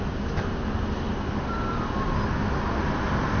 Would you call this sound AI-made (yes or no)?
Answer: no